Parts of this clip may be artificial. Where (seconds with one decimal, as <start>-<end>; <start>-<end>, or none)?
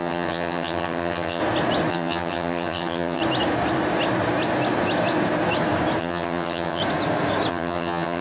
0.0-1.4; 1.9-3.2; 6.0-6.8; 7.5-8.2